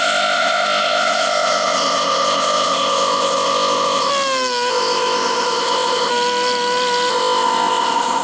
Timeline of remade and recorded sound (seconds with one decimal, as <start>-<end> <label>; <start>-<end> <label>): 0.0-4.1 remade; 4.1-4.7 recorded; 4.7-6.1 remade; 6.1-7.1 recorded; 7.1-8.2 remade